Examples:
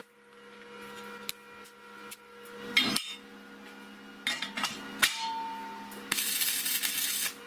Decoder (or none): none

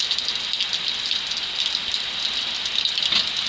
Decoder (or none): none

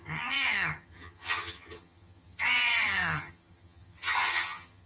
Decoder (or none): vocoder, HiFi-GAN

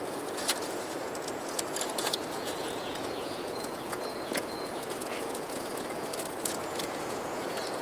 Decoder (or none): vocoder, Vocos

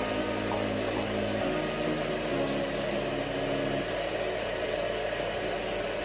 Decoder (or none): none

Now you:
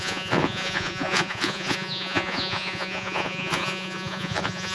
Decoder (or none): vocoder, Vocos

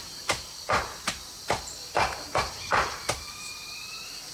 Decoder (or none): vocoder, BigVGAN v2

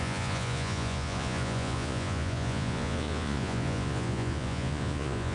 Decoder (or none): vocoder, Vocos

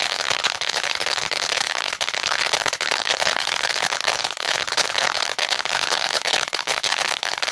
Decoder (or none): codec, HILCodec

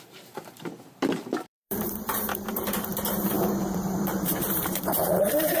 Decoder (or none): vocoder, BigVGAN v2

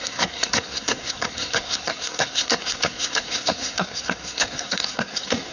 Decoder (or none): codec, SNAC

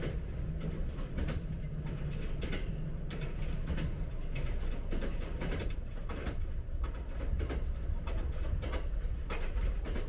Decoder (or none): none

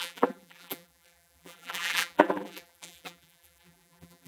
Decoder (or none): vocoder, BigVGAN v2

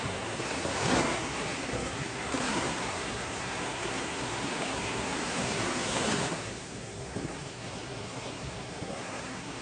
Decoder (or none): codec, SNAC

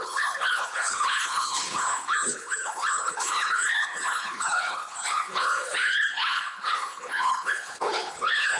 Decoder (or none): codec, HILCodec